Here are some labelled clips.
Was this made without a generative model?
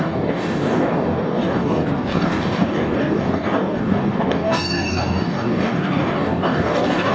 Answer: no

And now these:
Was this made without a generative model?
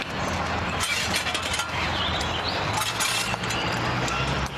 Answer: yes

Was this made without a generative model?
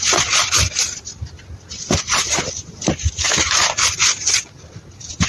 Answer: yes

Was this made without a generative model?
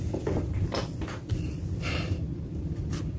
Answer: yes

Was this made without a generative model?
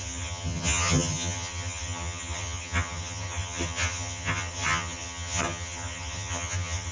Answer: no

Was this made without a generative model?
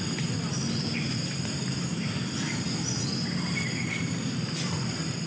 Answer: no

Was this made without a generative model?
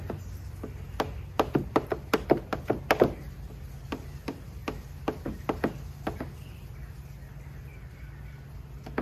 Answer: yes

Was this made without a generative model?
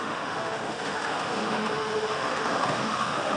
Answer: no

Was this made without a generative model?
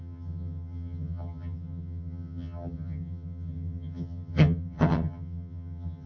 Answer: no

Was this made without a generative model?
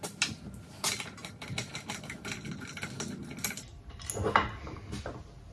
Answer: yes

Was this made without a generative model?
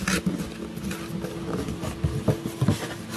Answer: yes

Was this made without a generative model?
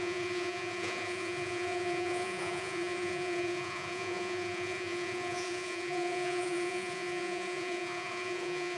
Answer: no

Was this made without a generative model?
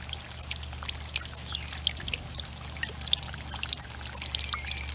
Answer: yes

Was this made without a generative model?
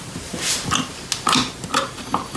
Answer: yes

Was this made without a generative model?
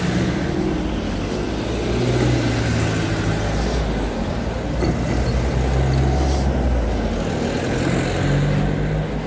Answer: yes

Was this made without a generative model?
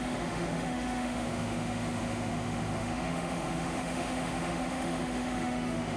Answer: no